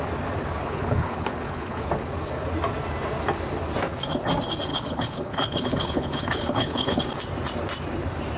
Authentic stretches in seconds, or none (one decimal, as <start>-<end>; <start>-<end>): 0.0-0.6; 1.9-4.7; 7.0-8.4